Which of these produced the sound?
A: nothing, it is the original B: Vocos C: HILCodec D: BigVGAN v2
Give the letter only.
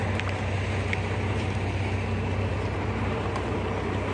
A